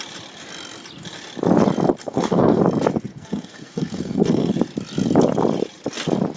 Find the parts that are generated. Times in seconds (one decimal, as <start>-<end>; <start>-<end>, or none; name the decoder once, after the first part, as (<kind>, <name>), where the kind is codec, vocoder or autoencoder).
2.0-2.6 (codec, SNAC); 3.1-4.5